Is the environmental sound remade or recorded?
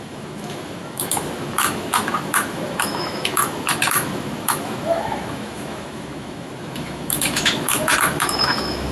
remade